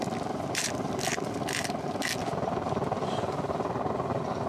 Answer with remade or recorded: recorded